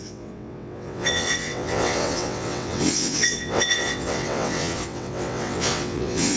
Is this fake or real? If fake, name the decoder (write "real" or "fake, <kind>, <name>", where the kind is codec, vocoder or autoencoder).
fake, vocoder, WaveNeXt